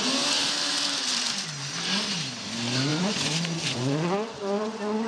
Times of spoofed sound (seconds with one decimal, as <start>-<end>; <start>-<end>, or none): 2.9-5.1